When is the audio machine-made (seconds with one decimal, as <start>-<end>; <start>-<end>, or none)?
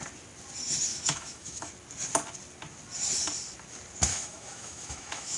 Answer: 0.9-1.7; 4.1-5.4